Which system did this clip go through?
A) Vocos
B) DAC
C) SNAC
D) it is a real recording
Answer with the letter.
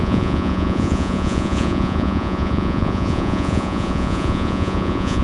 A